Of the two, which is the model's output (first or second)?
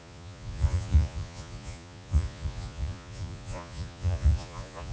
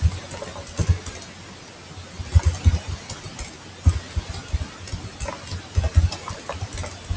first